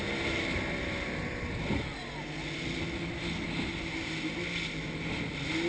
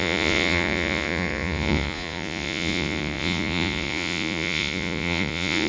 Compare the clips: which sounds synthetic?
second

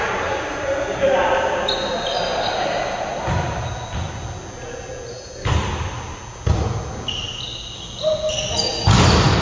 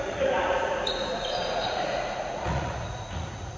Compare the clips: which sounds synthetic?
second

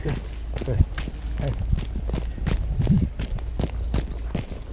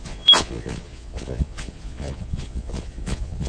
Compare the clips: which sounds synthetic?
second